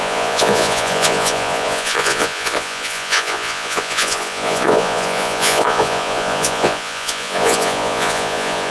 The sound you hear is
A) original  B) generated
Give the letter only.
B